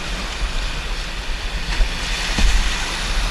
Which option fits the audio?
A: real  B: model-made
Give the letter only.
A